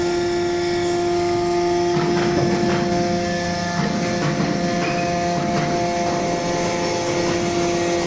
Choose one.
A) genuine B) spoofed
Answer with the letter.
A